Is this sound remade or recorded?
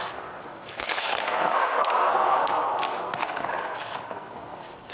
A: remade